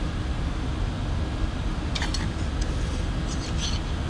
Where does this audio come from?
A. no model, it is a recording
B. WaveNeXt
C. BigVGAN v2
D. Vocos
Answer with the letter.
A